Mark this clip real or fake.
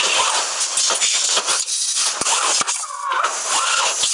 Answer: real